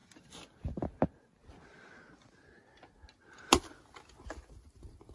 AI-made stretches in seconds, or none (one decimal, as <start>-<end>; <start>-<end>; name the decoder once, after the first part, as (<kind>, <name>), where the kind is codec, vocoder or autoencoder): none